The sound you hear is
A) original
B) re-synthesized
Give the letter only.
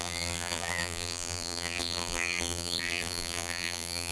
B